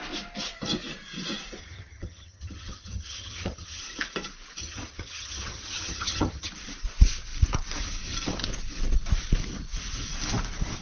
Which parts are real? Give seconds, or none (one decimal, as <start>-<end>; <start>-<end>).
0.0-1.6; 3.8-4.6; 6.5-10.8